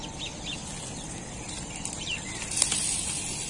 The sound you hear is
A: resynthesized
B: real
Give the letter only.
B